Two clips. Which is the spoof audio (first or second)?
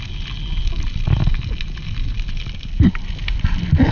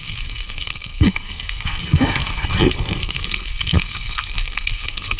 second